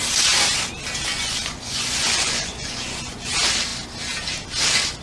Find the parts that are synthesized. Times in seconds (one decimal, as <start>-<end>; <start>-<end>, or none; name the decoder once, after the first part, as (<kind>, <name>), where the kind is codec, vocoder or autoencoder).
1.1-3.3 (vocoder, Vocos)